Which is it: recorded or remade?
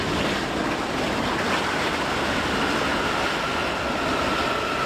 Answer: recorded